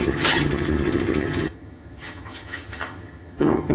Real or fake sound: fake